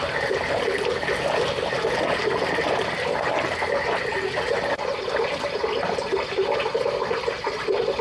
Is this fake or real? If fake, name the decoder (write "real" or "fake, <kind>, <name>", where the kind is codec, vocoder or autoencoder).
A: real